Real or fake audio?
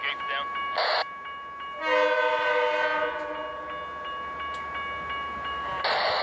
real